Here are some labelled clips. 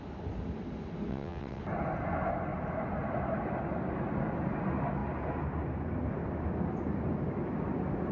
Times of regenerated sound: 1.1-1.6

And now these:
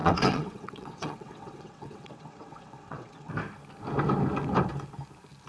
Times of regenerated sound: 0.0-3.3